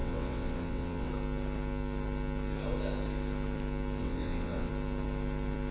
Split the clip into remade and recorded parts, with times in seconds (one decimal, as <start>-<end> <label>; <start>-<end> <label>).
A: 0.0-1.1 remade; 1.1-4.0 recorded; 4.0-4.7 remade; 4.7-5.7 recorded